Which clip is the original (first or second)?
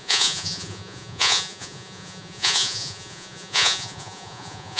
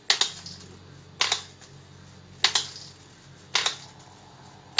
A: second